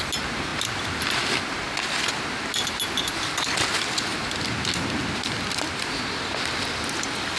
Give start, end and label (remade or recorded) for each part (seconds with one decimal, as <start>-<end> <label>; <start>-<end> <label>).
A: 0.0-7.4 recorded